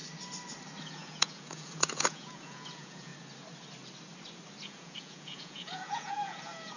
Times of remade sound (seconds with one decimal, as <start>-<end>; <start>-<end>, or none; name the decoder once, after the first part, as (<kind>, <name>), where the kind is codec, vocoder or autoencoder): 0.8-3.1 (vocoder, Vocos); 4.6-6.8